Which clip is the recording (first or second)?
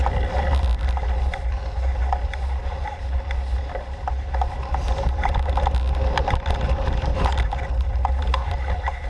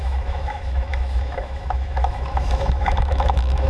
first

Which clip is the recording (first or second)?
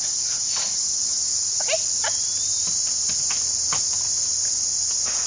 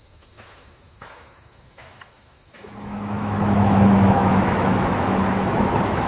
first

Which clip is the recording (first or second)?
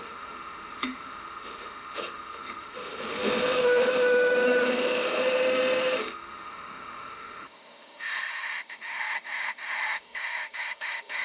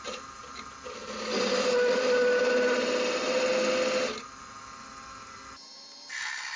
second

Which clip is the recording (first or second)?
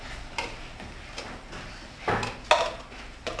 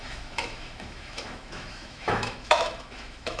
first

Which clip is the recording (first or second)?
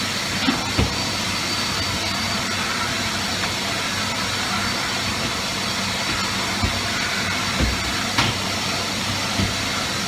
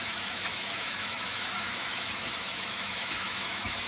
first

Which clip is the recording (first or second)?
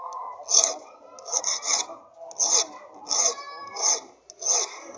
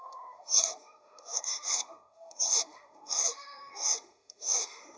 first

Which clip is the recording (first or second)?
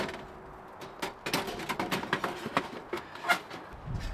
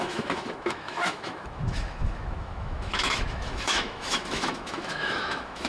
first